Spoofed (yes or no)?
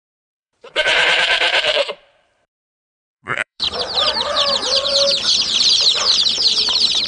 yes